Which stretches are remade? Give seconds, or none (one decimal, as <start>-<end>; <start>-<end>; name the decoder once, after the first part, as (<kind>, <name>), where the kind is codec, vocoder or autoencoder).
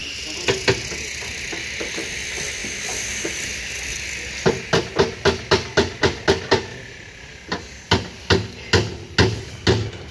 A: none